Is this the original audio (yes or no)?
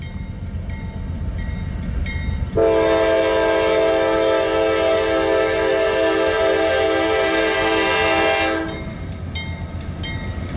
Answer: yes